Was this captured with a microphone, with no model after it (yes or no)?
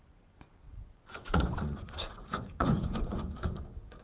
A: no